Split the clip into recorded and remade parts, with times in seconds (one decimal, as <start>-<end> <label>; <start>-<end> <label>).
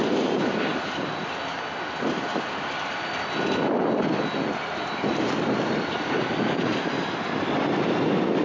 0.0-8.4 recorded